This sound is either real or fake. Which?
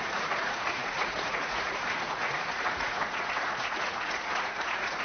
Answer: fake